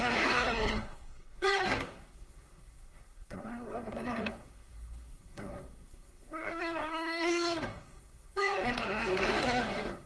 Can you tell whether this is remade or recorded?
remade